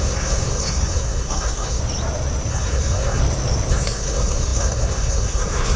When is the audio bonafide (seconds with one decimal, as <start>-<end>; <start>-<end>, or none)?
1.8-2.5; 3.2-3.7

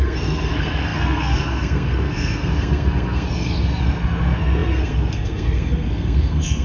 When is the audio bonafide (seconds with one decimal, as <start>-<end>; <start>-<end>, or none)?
none

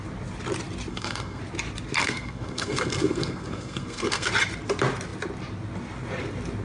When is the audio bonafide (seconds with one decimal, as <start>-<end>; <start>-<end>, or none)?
0.0-0.9; 1.4-2.0; 4.3-6.6

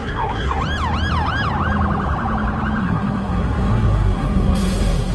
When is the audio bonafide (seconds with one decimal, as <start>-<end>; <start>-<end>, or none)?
0.6-2.8

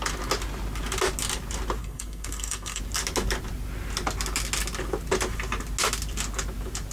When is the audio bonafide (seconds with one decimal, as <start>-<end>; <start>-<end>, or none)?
0.0-1.8; 2.8-6.9